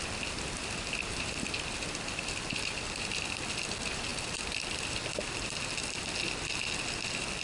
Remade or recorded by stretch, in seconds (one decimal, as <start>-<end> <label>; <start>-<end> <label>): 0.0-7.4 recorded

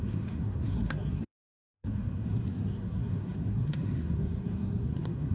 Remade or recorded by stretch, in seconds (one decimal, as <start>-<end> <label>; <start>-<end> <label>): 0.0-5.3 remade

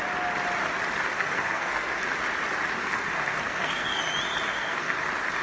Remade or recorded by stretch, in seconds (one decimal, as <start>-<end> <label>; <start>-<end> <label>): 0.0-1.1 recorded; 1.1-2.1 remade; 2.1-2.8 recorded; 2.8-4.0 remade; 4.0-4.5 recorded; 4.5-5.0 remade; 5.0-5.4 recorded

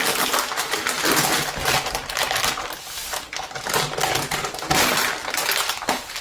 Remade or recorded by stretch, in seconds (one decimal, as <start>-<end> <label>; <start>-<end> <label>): 0.0-6.2 recorded

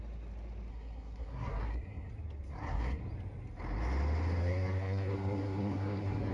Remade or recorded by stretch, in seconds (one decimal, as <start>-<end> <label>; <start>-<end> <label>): 0.0-0.7 recorded; 0.7-2.1 remade; 2.1-2.5 recorded; 2.5-3.0 remade; 3.0-4.4 recorded; 4.4-6.3 remade

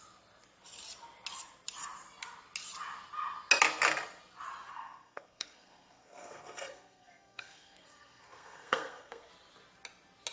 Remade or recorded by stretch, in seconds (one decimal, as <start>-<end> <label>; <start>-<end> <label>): 0.0-4.7 recorded; 4.7-9.3 remade; 9.3-10.3 recorded

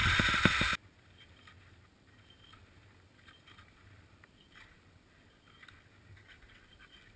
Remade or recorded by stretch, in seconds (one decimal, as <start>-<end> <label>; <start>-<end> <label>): 0.0-7.2 recorded